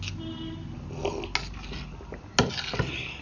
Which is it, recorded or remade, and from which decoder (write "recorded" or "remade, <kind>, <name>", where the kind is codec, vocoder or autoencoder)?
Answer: recorded